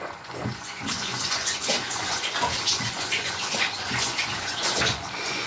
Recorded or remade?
remade